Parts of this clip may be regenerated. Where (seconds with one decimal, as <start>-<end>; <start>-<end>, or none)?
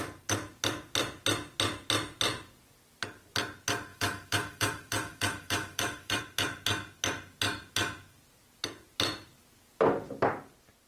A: 3.9-6.2